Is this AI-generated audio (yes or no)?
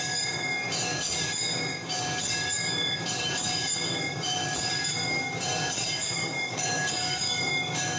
yes